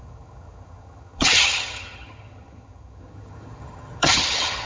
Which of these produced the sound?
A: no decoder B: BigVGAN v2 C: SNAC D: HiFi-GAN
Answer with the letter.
D